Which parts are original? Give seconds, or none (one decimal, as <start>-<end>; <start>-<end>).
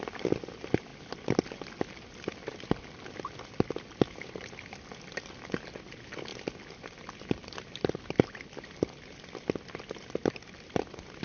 0.0-11.2